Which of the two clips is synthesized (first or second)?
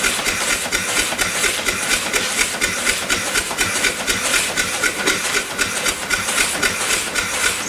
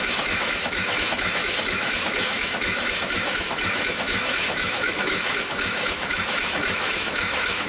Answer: second